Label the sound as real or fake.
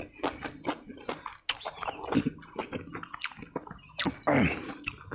real